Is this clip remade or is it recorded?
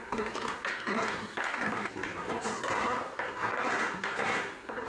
remade